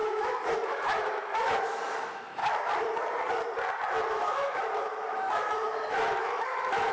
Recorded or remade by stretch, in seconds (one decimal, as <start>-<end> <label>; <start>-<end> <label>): 0.0-2.4 remade; 2.4-4.1 recorded; 4.1-6.9 remade